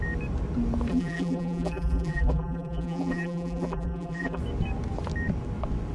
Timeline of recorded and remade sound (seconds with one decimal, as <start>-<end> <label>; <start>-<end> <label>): 0.0-0.9 recorded; 0.9-4.4 remade; 4.4-5.9 recorded